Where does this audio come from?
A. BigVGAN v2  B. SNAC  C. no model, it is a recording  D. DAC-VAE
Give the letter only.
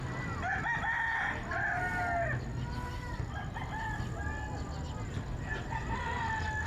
C